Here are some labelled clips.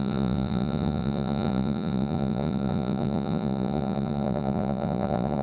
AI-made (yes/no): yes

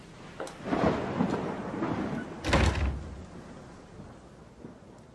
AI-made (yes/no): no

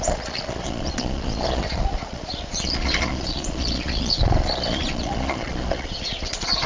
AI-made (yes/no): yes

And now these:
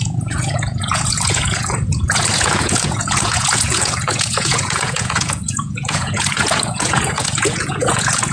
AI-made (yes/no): yes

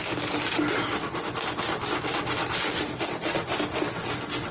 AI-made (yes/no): no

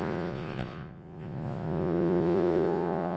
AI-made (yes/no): yes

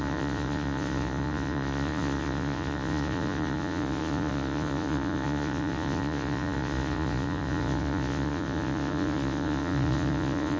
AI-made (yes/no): yes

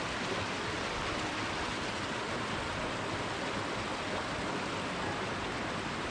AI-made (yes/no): no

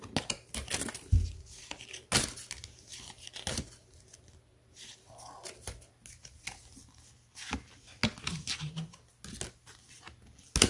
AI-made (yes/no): no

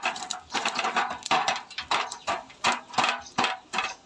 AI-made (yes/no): no